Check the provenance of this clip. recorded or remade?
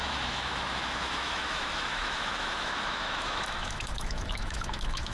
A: remade